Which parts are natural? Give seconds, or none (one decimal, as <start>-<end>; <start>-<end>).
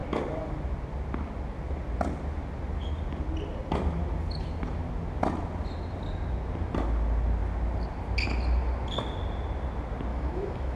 0.0-10.1